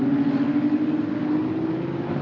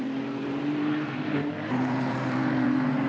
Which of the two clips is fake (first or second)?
second